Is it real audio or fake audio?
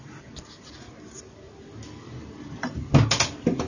real